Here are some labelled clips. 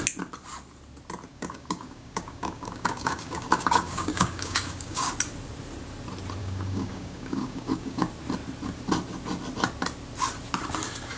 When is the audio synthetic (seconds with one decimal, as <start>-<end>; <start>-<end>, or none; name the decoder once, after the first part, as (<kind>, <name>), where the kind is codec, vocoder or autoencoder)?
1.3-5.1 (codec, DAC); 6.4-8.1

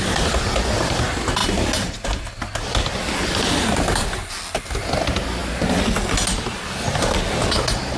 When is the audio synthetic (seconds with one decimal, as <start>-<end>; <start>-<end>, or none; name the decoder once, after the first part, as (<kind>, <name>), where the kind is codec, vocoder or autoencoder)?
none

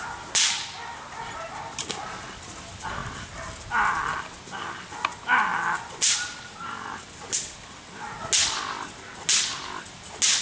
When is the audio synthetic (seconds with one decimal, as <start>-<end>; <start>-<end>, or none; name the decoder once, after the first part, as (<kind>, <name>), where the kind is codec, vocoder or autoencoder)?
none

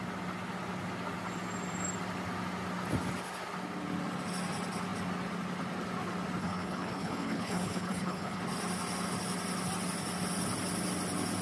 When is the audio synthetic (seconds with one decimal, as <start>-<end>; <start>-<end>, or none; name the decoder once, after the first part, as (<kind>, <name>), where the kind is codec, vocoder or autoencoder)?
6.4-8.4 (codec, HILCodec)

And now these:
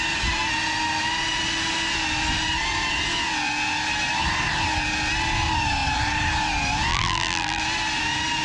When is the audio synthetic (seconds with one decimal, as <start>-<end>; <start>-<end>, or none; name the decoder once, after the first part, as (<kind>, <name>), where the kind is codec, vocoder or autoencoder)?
6.9-7.6 (vocoder, BigVGAN v2)

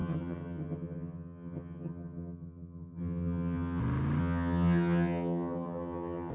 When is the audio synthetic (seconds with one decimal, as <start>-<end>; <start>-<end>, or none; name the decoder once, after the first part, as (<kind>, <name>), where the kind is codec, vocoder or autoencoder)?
0.0-3.8 (vocoder, HiFi-GAN); 4.2-6.3